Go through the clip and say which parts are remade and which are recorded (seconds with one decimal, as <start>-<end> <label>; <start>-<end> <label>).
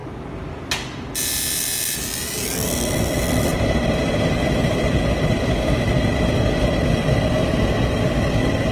0.0-3.5 recorded; 3.5-5.0 remade; 5.0-8.7 recorded